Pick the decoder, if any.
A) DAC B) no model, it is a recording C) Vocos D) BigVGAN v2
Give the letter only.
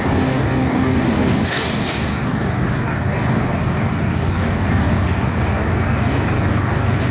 A